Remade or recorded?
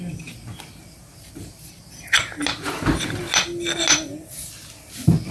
recorded